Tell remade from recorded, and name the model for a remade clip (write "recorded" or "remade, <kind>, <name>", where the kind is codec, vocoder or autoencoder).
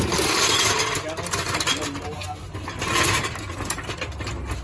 recorded